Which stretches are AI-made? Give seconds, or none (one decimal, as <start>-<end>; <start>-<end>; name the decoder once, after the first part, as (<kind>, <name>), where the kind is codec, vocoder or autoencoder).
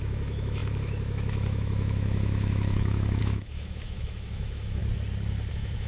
0.0-4.8 (autoencoder, DAC-VAE); 5.5-5.9